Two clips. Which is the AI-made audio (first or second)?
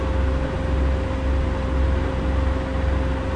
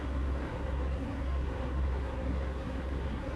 second